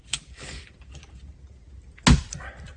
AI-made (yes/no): no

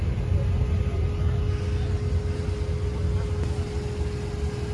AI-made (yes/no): no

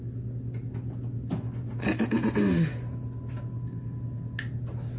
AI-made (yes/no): no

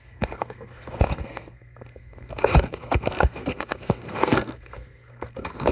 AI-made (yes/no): yes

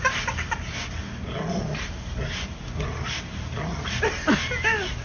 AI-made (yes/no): no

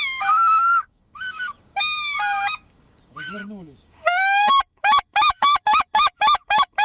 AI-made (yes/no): yes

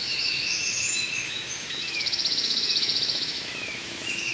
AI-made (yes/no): yes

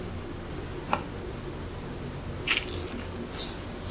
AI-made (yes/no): no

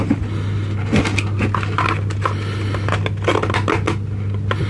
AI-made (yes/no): no